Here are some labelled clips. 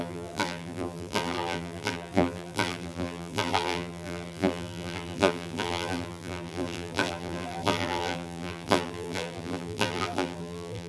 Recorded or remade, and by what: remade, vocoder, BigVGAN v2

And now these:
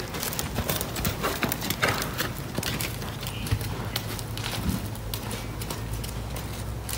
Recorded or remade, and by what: recorded